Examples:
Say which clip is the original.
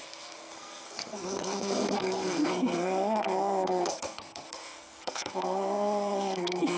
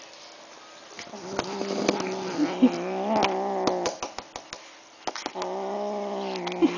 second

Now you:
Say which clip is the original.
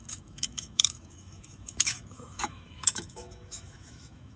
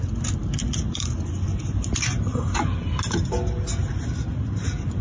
second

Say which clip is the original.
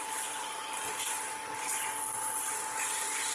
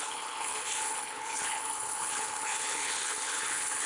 first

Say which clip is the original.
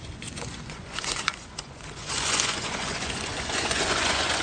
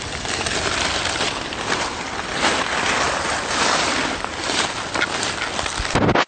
second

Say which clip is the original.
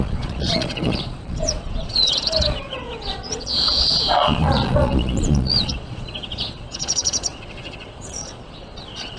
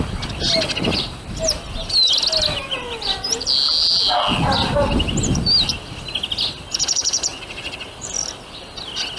second